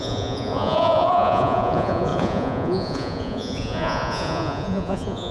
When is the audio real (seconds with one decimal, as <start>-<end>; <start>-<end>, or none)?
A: none